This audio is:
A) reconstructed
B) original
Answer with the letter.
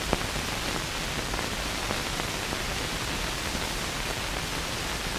B